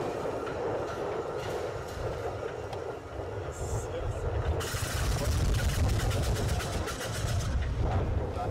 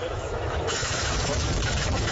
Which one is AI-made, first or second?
second